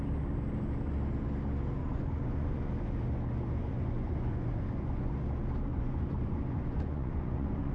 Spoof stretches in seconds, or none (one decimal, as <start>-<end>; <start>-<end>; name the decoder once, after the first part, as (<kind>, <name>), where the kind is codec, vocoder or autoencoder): 1.8-2.7 (vocoder, Vocos); 3.6-5.1; 5.7-7.7